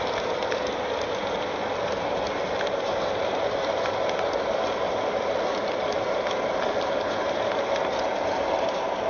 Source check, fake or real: real